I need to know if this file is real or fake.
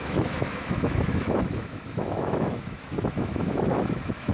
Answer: fake